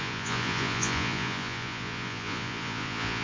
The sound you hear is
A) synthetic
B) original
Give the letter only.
A